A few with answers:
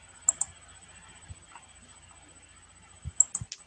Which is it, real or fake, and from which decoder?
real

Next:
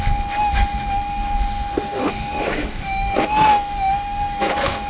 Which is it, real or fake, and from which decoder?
fake, autoencoder, DAC-VAE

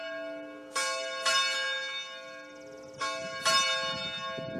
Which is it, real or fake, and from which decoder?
real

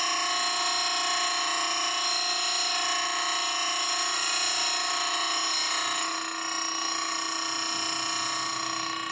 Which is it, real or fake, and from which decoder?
real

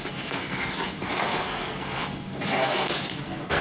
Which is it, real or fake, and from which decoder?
fake, codec, SNAC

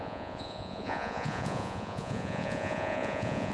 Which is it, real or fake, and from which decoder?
fake, vocoder, Vocos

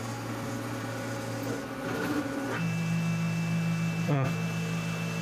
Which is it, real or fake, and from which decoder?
real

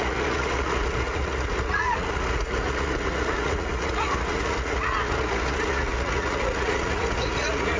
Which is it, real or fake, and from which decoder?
fake, vocoder, Vocos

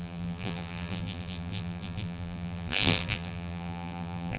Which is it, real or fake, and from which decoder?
fake, vocoder, BigVGAN v2